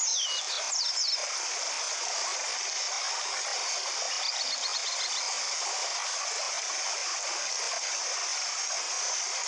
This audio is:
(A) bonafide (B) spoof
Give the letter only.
A